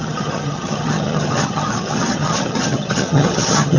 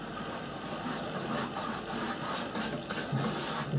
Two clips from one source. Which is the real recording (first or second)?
second